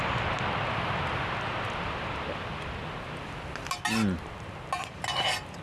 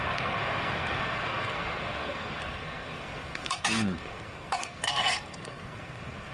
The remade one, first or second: second